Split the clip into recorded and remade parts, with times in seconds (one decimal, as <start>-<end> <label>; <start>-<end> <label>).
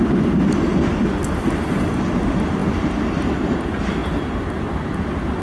0.0-5.4 recorded